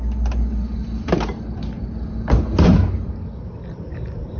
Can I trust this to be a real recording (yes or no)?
yes